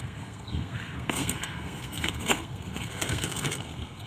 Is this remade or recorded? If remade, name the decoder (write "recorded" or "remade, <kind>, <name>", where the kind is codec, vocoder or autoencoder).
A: remade, codec, SNAC